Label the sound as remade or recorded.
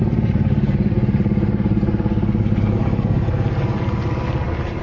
remade